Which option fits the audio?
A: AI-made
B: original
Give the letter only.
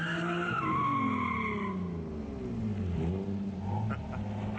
B